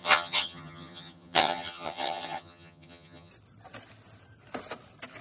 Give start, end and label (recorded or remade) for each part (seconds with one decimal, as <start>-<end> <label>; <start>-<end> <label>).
0.0-3.3 remade; 3.3-5.2 recorded

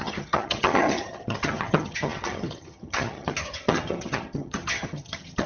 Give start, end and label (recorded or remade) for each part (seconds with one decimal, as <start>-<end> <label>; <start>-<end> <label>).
0.0-5.5 remade

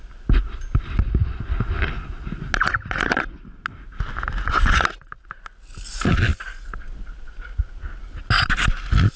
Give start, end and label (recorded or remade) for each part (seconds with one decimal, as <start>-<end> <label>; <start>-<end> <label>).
0.0-9.2 recorded

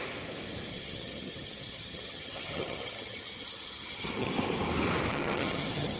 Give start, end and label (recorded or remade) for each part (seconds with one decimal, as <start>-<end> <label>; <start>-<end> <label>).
0.0-0.7 recorded; 0.7-4.3 remade; 4.3-5.1 recorded; 5.1-6.0 remade